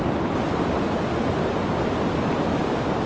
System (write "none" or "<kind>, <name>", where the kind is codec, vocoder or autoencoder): none